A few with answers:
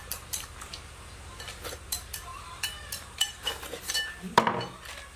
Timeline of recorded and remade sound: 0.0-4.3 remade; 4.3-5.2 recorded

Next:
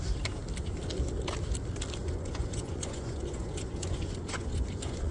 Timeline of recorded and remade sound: 0.0-2.0 recorded; 2.0-5.1 remade

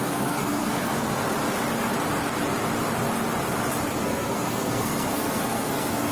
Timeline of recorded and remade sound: 0.0-1.2 remade; 1.2-4.0 recorded; 4.0-6.1 remade

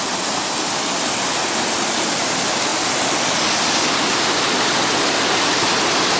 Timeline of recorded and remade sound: 0.0-6.2 recorded

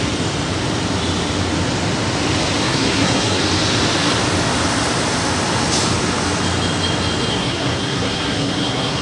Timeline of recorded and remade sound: 0.0-2.6 recorded; 2.6-3.4 remade; 3.4-7.3 recorded; 7.3-9.0 remade

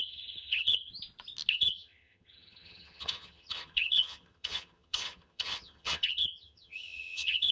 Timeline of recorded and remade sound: 0.0-0.9 remade; 0.9-1.5 recorded; 1.5-7.5 remade